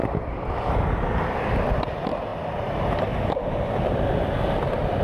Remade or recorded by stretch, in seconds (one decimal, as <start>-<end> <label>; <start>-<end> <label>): 0.0-5.0 recorded